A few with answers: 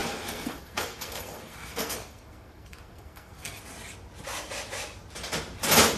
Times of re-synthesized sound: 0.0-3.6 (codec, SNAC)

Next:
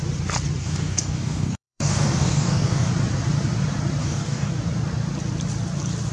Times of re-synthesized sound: 0.6-2.9 (codec, DAC); 4.0-4.5

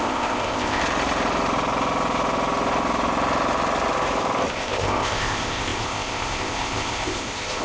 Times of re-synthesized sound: 0.0-0.8 (codec, ZipCodec); 4.5-7.6

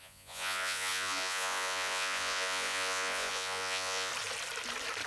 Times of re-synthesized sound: 0.0-4.1 (vocoder, Vocos)